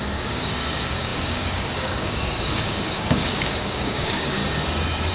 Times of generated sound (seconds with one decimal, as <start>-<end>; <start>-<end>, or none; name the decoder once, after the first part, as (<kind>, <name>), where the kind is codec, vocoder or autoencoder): 0.0-4.4 (codec, DAC)